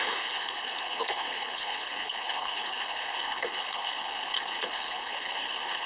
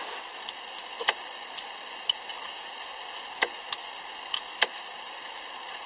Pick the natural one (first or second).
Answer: second